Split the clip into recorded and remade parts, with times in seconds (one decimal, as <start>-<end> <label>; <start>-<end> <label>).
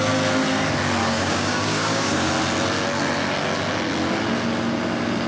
0.0-1.0 recorded; 1.0-2.3 remade; 2.3-5.3 recorded